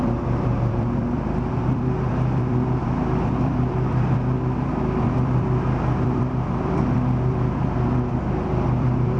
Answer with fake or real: fake